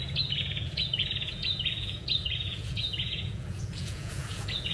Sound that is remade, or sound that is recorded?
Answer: remade